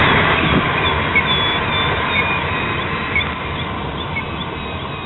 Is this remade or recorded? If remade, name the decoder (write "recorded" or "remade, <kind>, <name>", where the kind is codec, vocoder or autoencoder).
recorded